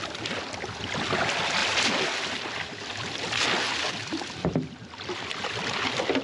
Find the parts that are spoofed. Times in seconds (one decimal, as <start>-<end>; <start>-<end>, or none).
none

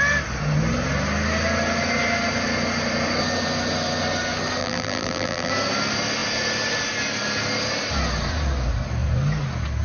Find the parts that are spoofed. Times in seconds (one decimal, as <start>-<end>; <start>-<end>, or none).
4.6-5.5

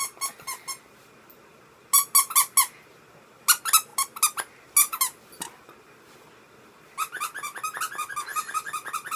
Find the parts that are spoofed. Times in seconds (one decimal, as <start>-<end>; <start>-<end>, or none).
8.3-9.2

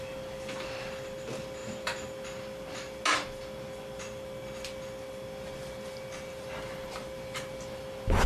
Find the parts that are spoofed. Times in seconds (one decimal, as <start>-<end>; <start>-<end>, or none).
none

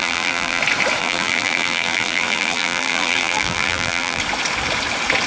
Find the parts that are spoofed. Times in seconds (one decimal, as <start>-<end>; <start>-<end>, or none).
0.0-0.6; 1.0-4.2

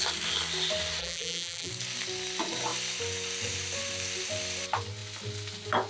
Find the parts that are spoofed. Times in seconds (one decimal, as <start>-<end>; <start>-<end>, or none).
1.0-1.7